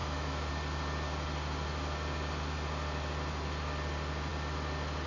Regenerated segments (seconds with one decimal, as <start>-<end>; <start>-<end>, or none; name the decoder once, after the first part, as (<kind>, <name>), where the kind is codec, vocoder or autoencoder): 0.0-0.5 (autoencoder, DAC-VAE)